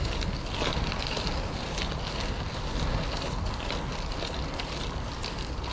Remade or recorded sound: recorded